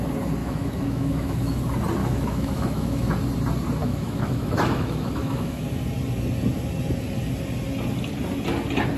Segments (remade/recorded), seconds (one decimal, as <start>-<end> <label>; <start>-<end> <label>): 0.0-0.4 recorded; 0.4-1.6 remade; 1.6-2.0 recorded; 2.0-3.1 remade; 3.1-3.8 recorded; 3.8-5.6 remade; 5.6-9.0 recorded